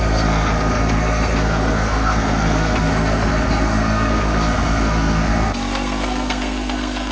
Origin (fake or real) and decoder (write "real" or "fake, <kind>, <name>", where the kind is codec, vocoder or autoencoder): fake, codec, SNAC